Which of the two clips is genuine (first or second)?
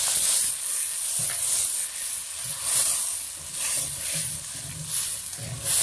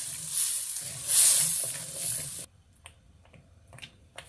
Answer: first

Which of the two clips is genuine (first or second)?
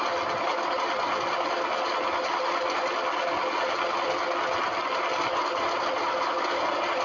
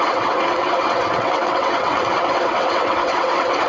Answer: first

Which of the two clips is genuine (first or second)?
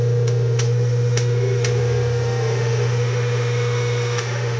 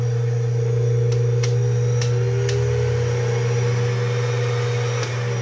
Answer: second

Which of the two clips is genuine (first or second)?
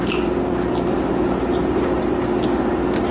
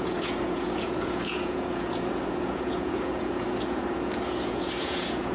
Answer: first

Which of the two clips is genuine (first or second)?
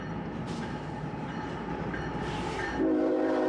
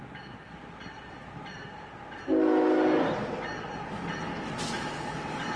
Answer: second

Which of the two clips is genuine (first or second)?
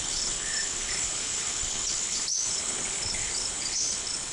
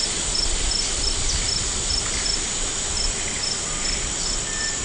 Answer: second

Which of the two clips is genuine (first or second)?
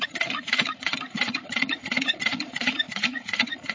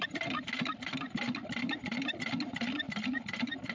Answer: second